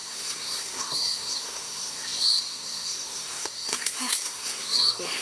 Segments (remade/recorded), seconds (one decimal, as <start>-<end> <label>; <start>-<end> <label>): 0.0-5.2 remade